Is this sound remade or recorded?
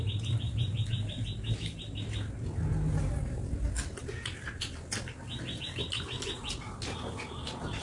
recorded